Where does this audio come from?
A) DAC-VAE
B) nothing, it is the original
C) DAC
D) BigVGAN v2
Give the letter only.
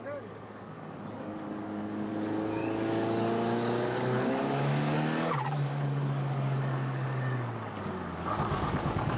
C